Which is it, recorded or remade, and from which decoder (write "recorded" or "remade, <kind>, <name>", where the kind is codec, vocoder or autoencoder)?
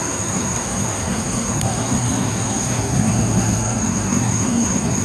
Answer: remade, codec, SNAC